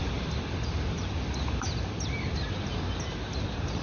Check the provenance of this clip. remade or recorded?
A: recorded